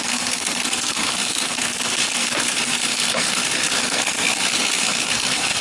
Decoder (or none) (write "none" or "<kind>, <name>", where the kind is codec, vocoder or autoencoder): codec, SNAC